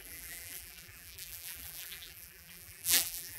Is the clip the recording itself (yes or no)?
no